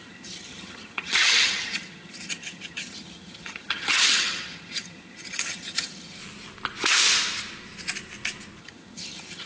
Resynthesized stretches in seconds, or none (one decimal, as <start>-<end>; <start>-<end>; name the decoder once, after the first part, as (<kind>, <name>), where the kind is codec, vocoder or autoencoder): 0.0-6.2 (vocoder, HiFi-GAN); 8.6-9.5